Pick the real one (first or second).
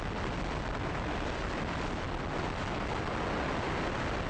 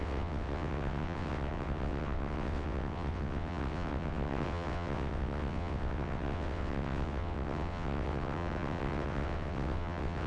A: first